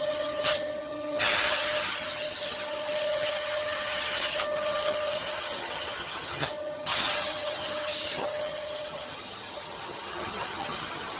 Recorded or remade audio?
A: remade